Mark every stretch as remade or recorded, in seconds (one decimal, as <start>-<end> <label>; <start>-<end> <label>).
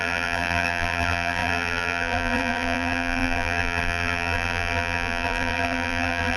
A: 0.0-6.4 remade